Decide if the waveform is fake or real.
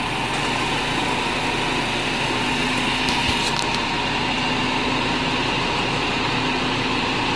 real